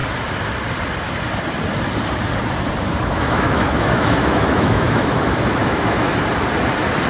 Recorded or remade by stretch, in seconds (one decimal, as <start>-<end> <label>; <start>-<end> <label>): 0.0-2.9 recorded; 2.9-6.1 remade; 6.1-7.1 recorded